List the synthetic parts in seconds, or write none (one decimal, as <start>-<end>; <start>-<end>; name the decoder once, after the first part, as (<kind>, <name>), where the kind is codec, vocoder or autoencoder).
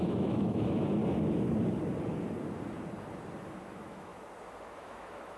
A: 0.0-1.0 (autoencoder, DAC-VAE); 3.6-4.1; 4.6-5.4